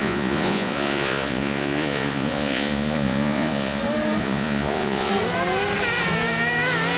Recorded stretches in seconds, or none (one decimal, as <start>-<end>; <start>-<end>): 3.8-4.2; 5.1-7.0